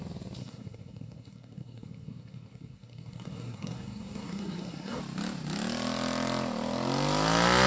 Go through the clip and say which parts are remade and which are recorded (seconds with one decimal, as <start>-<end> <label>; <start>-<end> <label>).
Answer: 0.0-0.4 recorded; 0.4-5.0 remade; 5.0-7.7 recorded